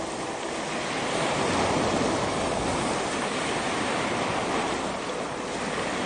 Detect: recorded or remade recorded